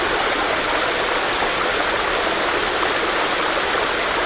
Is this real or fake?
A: real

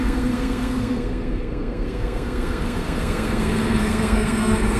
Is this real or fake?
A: fake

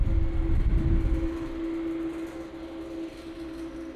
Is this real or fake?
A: real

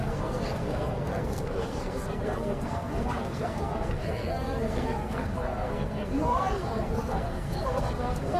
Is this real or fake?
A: fake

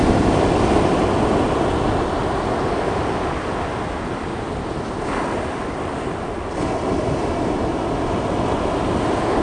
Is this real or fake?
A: real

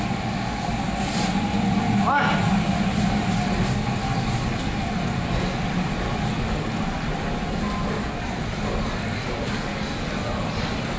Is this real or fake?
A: real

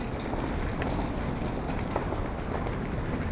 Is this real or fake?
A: real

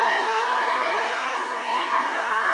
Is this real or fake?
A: fake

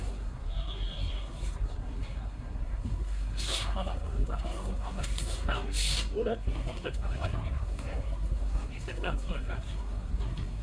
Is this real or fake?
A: fake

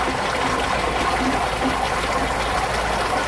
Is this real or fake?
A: real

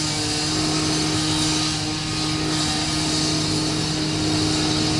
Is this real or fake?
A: real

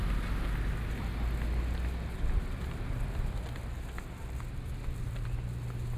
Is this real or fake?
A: real